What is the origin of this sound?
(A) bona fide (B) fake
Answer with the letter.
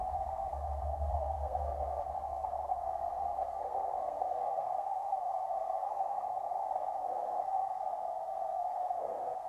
B